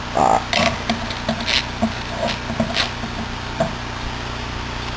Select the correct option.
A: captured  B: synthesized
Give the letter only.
A